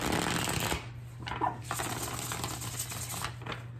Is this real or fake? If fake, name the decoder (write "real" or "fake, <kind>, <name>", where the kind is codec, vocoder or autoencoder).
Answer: real